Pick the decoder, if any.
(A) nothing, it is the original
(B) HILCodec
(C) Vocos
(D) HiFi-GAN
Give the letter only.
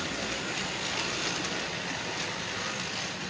A